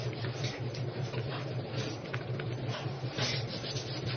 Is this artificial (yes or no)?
no